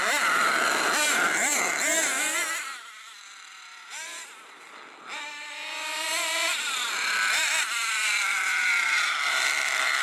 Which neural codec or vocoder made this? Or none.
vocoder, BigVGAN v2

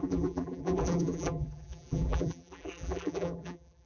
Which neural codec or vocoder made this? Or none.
vocoder, BigVGAN v2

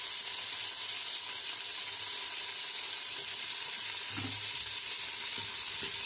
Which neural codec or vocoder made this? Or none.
none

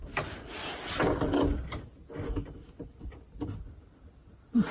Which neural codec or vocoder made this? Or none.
none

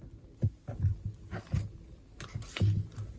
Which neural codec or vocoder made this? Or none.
none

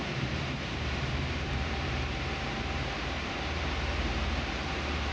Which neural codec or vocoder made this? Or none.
vocoder, BigVGAN v2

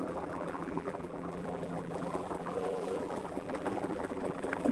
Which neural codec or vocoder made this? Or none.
vocoder, BigVGAN v2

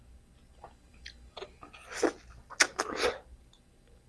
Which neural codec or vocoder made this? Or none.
none